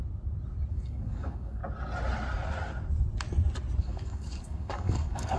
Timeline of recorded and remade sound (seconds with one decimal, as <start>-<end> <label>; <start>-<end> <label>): 0.0-0.7 recorded; 0.7-1.6 remade; 1.6-3.8 recorded; 3.8-5.4 remade